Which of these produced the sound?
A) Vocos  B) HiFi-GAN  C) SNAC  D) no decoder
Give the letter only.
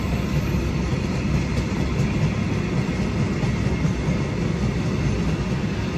D